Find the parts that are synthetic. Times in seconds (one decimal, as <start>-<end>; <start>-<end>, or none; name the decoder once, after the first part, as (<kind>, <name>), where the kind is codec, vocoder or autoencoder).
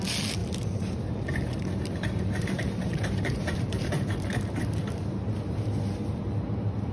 0.4-4.5 (vocoder, BigVGAN v2)